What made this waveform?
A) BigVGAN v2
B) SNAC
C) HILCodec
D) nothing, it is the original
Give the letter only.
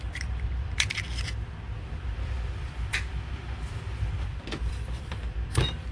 A